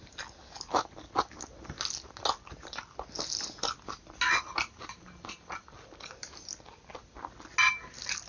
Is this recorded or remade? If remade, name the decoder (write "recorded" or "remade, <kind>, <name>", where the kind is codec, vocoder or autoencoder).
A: recorded